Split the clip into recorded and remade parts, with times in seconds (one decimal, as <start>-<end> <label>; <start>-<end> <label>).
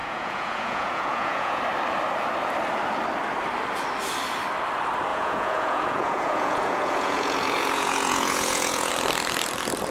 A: 0.0-1.6 remade; 1.6-5.1 recorded; 5.1-8.9 remade; 8.9-9.9 recorded